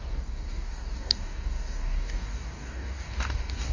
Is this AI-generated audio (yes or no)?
yes